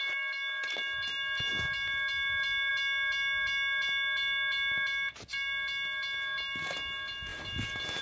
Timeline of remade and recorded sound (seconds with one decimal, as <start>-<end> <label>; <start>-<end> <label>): 0.0-8.0 recorded